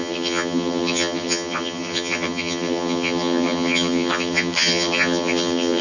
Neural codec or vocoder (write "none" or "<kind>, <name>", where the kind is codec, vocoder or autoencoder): vocoder, HiFi-GAN